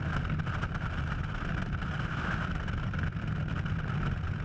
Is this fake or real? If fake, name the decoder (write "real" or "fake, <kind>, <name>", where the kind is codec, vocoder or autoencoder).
real